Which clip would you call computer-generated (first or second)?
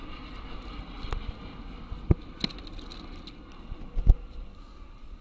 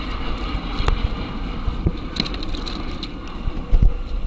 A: second